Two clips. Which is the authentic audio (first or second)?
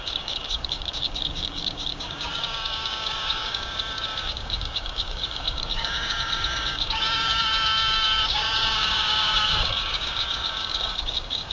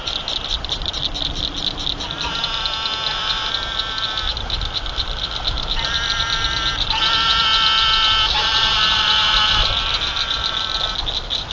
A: second